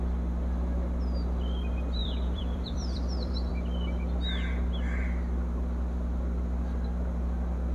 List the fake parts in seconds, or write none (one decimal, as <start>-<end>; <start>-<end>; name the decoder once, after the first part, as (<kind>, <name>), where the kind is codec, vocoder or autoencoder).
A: 2.0-3.5 (vocoder, BigVGAN v2)